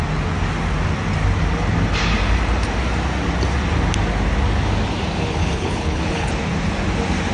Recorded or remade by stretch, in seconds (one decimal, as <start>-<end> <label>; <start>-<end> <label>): 0.0-5.4 recorded; 5.4-6.3 remade; 6.3-7.3 recorded